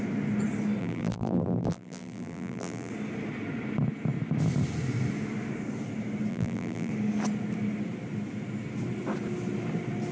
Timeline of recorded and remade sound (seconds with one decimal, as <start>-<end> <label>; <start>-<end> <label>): 0.0-0.8 recorded; 0.8-2.9 remade; 2.9-6.3 recorded; 6.3-6.9 remade; 6.9-10.1 recorded